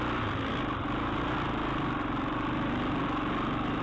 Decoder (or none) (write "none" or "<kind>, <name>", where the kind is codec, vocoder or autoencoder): none